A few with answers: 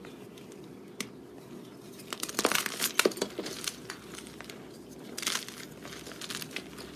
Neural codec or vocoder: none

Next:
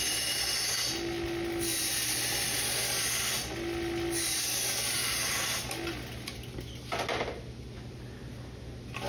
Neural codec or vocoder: none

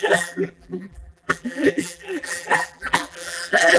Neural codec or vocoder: vocoder, BigVGAN v2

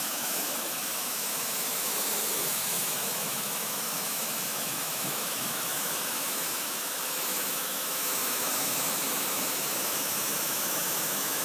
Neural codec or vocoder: autoencoder, DAC-VAE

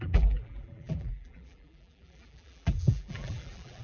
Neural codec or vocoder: vocoder, BigVGAN v2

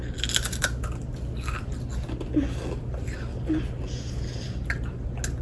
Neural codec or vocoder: none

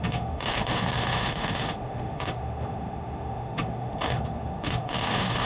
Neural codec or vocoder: autoencoder, DAC-VAE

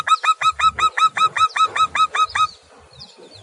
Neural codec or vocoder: none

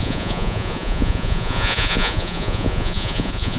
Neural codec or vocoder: vocoder, Vocos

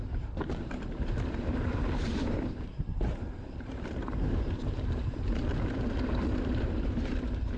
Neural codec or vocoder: vocoder, BigVGAN v2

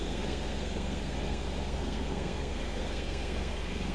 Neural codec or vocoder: codec, SNAC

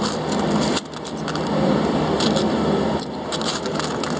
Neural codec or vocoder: vocoder, BigVGAN v2